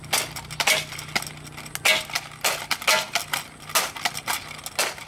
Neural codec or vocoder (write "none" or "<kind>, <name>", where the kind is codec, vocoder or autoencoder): none